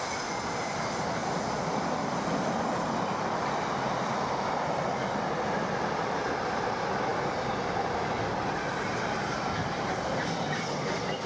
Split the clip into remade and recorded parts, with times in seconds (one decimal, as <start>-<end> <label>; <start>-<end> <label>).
0.0-11.3 recorded